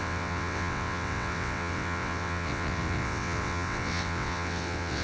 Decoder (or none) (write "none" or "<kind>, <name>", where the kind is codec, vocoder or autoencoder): vocoder, WaveNeXt